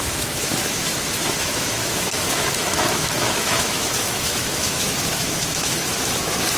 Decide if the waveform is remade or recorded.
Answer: remade